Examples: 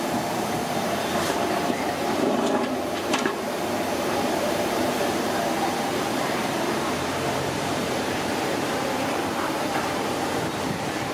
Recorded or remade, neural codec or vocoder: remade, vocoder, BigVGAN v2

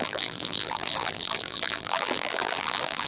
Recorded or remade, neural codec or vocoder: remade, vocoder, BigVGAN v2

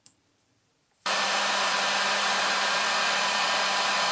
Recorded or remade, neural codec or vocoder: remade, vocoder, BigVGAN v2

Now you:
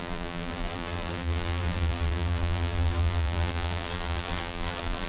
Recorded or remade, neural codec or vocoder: remade, vocoder, BigVGAN v2